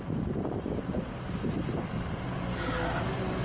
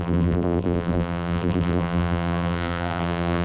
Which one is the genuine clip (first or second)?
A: first